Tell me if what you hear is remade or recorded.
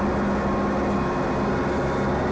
recorded